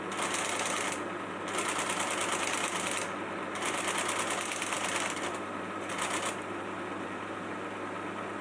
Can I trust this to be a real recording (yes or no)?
yes